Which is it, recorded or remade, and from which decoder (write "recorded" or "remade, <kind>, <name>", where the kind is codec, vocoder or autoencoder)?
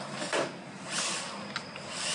recorded